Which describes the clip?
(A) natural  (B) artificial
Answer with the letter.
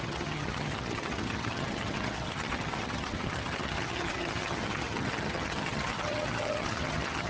B